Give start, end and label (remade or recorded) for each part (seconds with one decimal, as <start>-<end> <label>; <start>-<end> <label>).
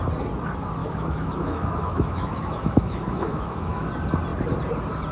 0.0-0.8 recorded; 0.8-3.9 remade; 3.9-5.1 recorded